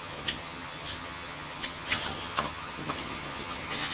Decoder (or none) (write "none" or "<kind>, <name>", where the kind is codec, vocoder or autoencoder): vocoder, HiFi-GAN